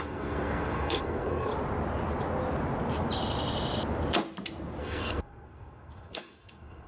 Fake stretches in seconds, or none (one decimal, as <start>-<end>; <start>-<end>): 0.0-1.5; 4.8-6.9